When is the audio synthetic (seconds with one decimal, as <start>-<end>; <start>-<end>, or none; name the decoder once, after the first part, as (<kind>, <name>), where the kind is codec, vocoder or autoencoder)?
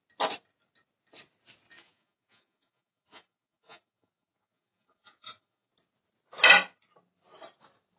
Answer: 1.8-5.7 (vocoder, Vocos)